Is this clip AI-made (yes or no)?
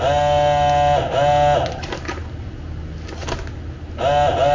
no